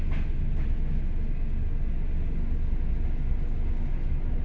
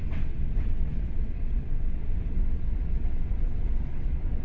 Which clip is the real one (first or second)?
first